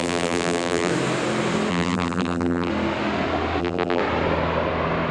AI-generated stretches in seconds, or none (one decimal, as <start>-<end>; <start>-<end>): 0.0-0.9; 1.7-2.7; 3.6-4.0